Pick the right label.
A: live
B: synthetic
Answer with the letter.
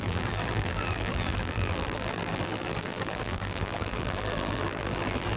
B